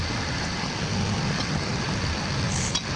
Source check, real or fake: real